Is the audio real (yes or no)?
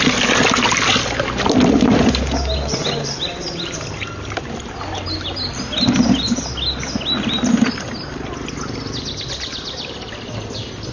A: yes